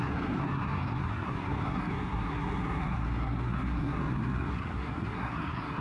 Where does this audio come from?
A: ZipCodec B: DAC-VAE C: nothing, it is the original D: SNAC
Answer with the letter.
D